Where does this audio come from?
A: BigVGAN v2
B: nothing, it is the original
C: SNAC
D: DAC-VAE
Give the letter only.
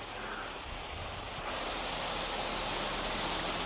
B